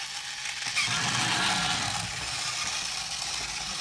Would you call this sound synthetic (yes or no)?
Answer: no